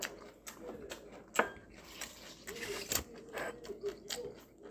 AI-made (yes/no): no